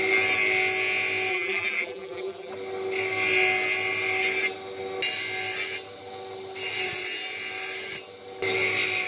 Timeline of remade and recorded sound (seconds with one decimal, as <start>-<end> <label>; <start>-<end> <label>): 0.0-1.3 recorded; 1.3-2.5 remade; 2.5-9.1 recorded